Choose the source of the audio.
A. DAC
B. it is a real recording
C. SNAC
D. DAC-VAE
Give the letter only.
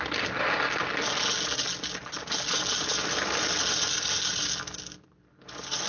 B